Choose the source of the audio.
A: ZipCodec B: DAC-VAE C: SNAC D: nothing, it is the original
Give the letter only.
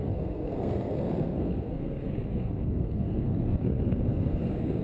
C